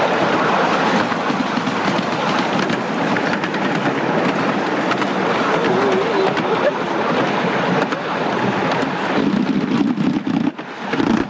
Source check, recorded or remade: recorded